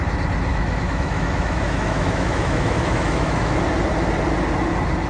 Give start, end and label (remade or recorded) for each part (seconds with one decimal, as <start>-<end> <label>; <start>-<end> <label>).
0.0-0.5 recorded; 0.5-3.6 remade; 3.6-5.1 recorded